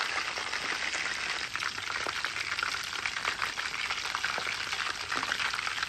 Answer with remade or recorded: recorded